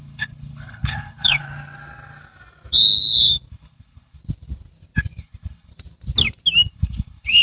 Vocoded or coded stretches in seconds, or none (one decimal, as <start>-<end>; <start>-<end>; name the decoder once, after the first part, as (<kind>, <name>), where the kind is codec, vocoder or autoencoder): 0.0-1.4 (codec, HILCodec); 3.5-4.2; 5.2-5.7; 6.7-7.4